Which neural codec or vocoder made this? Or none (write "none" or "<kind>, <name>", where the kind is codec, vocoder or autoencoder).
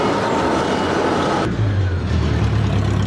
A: none